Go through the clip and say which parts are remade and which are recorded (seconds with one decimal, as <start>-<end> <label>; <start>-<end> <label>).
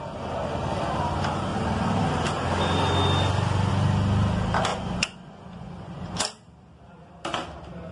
0.0-4.7 recorded; 4.7-6.1 remade; 6.1-7.9 recorded